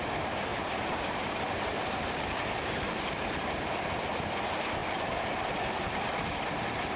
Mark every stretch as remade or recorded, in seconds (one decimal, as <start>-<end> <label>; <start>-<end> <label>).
0.0-0.5 recorded; 0.5-1.2 remade; 1.2-1.7 recorded; 1.7-4.1 remade; 4.1-4.8 recorded; 4.8-6.0 remade; 6.0-7.0 recorded